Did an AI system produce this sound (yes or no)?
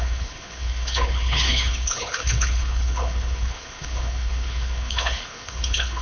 yes